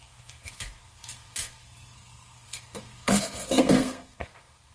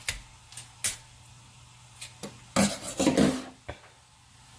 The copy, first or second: first